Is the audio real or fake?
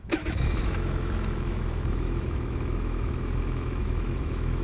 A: fake